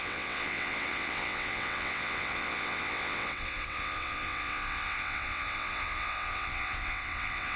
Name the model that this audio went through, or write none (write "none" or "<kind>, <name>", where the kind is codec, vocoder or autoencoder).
vocoder, WaveNeXt